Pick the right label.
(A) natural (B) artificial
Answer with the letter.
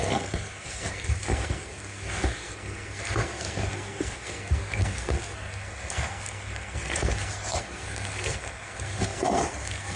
B